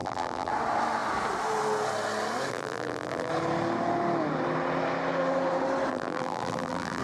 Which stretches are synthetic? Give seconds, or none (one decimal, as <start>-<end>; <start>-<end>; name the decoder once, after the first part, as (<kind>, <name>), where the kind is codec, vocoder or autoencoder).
0.0-0.5 (vocoder, BigVGAN v2); 2.5-3.3; 5.9-7.0

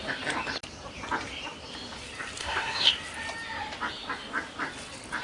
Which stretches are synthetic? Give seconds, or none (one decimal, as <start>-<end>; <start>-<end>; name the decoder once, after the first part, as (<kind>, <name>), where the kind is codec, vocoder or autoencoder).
2.4-2.9 (codec, SNAC)

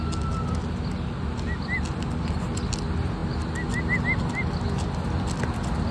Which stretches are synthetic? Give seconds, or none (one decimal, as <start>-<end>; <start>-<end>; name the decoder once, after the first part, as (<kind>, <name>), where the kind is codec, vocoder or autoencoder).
none

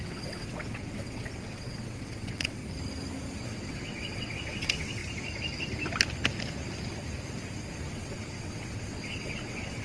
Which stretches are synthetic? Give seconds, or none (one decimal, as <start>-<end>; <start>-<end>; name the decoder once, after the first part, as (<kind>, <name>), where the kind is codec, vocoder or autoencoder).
0.0-2.6 (vocoder, WaveNeXt); 3.4-5.0; 7.9-9.8

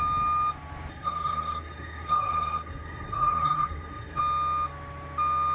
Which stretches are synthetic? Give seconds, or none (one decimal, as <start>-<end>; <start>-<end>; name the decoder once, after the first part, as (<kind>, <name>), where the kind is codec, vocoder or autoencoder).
0.9-4.2 (codec, SNAC)

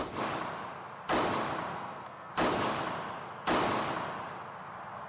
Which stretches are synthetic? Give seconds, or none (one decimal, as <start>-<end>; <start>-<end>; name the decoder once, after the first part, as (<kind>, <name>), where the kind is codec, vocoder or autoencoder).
1.7-2.3 (codec, SNAC)